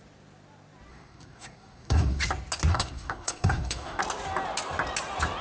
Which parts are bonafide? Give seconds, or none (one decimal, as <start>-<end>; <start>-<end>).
0.0-0.9; 2.2-2.7; 4.0-5.4